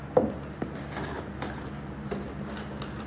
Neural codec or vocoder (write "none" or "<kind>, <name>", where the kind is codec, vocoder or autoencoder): none